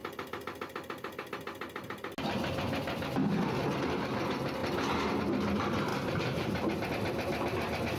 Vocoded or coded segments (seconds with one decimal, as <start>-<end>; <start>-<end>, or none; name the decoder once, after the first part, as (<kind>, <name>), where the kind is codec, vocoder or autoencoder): none